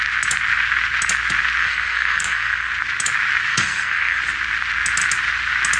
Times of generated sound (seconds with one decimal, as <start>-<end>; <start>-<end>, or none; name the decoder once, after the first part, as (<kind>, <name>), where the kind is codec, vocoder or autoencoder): 1.6-2.7 (codec, SNAC); 3.5-4.2